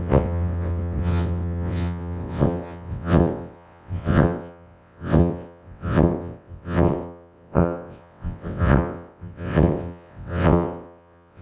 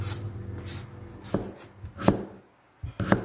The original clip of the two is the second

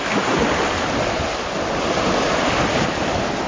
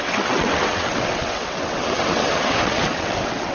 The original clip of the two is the first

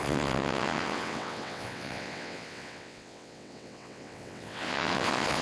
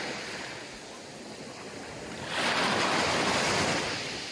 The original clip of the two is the second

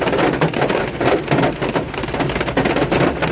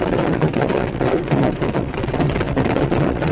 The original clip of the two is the first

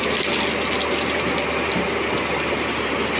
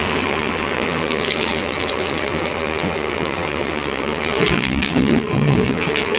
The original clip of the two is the first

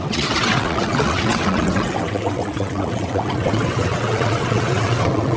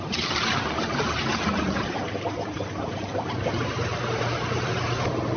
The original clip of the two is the second